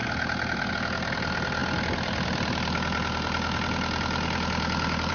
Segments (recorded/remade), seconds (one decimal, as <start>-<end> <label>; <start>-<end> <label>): 0.0-5.1 recorded